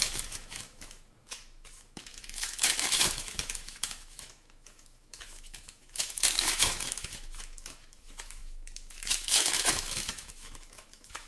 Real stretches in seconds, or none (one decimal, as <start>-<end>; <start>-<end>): none